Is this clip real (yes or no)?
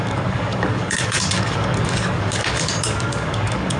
no